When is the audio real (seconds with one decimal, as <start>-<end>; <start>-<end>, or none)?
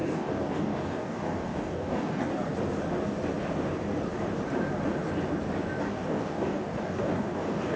2.3-5.8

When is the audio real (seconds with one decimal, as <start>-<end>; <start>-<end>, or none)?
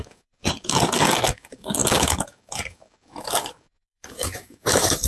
none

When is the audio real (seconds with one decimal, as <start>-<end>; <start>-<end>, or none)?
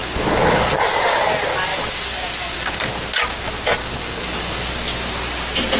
1.2-1.7; 2.8-3.8; 4.7-5.8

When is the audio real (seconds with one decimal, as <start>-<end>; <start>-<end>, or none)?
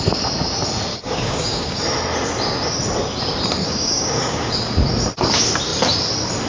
0.0-0.9; 1.8-3.6; 4.5-6.5